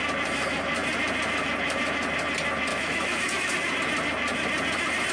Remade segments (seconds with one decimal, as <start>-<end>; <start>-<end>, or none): 2.7-3.5